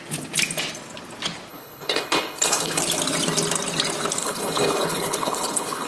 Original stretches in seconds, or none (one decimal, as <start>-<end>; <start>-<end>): 0.0-1.5; 2.8-4.2